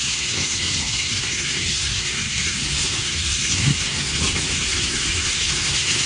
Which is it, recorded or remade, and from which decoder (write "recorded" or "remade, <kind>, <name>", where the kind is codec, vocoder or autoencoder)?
remade, codec, SNAC